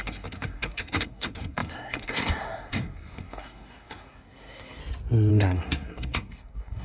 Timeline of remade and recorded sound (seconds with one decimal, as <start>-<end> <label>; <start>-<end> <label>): 0.0-4.8 remade; 4.8-5.3 recorded; 5.3-6.8 remade